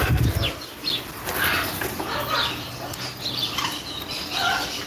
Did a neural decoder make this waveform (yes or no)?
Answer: no